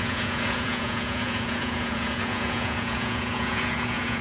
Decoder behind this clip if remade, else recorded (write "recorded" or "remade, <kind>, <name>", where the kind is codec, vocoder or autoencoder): remade, vocoder, Vocos